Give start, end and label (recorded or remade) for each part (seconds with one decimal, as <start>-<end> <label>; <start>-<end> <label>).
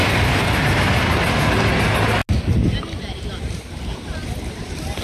0.0-5.0 recorded